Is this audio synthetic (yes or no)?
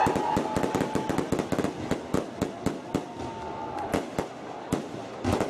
no